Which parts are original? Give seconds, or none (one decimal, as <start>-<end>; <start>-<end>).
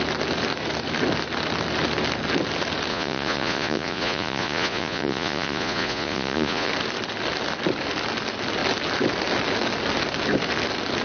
0.0-2.9; 6.7-11.0